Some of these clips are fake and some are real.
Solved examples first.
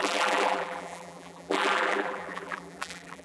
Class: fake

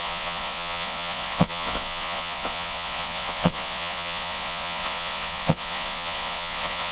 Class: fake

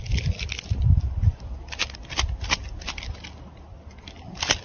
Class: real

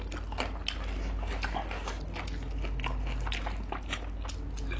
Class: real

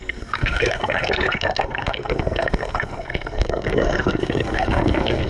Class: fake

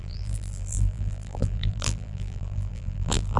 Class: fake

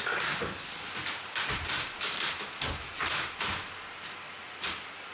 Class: real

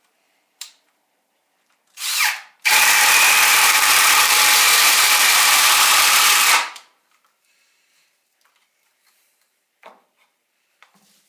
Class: fake